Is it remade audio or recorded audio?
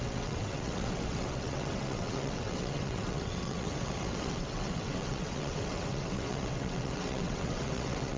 remade